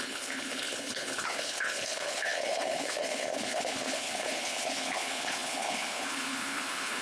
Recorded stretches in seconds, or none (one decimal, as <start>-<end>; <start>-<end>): none